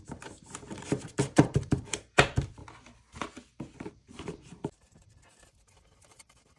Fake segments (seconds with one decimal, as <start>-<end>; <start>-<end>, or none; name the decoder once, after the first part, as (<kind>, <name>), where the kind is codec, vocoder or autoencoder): 0.0-2.6 (vocoder, BigVGAN v2); 3.9-6.6